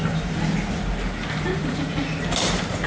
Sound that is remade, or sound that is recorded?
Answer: recorded